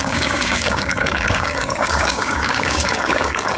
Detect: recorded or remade remade